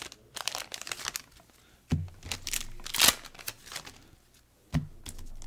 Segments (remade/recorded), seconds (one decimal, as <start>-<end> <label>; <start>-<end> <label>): 0.0-5.5 recorded